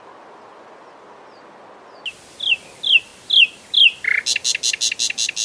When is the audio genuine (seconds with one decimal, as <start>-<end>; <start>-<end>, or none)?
0.0-5.4